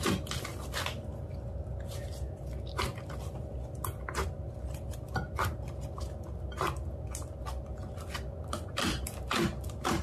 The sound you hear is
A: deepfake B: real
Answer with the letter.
B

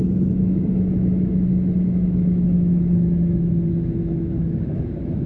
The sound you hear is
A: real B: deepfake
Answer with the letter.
B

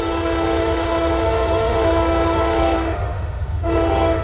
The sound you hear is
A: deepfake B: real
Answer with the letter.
A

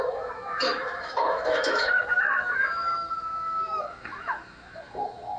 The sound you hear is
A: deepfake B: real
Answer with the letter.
A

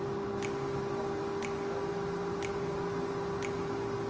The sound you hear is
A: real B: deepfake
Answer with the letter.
A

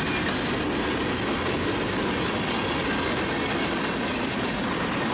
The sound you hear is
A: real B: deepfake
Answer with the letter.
A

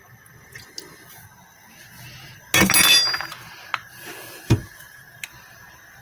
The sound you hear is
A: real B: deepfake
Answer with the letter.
A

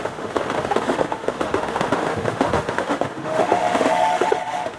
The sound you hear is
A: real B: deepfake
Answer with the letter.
B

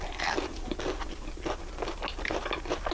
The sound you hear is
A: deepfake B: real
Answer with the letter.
B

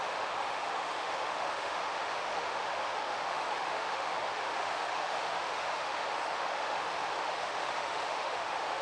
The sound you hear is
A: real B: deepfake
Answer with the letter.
B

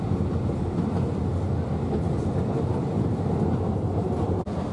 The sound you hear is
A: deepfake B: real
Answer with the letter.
B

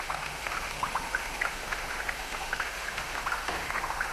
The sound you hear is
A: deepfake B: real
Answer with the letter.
A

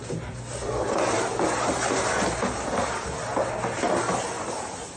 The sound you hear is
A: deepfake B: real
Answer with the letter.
B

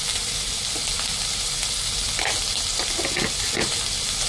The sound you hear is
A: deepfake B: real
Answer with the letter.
B